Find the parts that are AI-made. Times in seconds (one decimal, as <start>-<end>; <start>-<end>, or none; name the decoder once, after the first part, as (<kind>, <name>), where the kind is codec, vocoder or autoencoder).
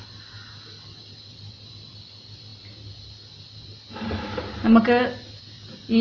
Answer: none